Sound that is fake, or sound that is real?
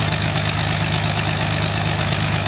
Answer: fake